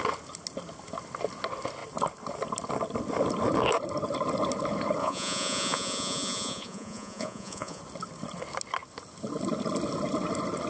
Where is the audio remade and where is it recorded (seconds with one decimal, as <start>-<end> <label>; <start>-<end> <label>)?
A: 0.0-5.0 recorded; 5.0-7.8 remade; 7.8-10.7 recorded